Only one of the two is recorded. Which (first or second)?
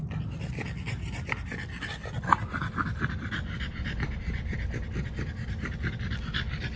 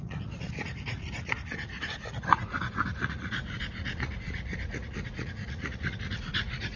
first